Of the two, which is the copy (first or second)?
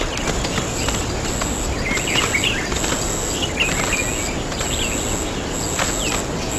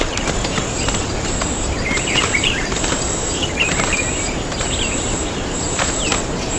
second